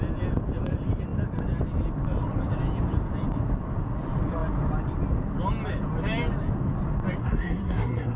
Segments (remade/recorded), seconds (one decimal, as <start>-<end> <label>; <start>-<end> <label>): 0.0-7.2 recorded; 7.2-8.2 remade